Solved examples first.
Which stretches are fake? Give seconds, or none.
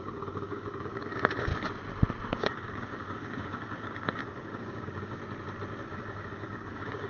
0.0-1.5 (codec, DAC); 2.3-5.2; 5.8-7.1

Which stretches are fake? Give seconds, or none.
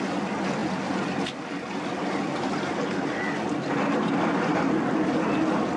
0.6-4.1 (vocoder, BigVGAN v2)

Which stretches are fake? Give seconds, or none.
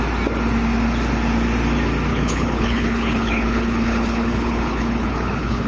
2.1-5.7 (codec, HILCodec)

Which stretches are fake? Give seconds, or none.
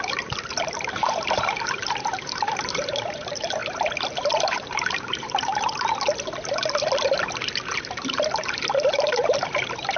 0.0-5.5 (vocoder, BigVGAN v2); 7.7-10.0